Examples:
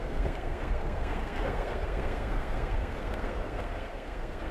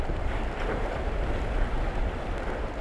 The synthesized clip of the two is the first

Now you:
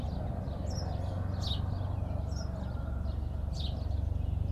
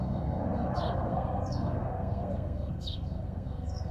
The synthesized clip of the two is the second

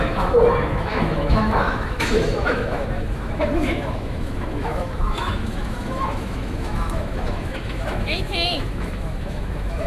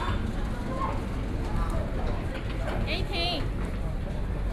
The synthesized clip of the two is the first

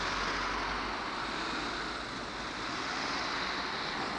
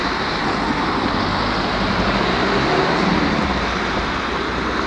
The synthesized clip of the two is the second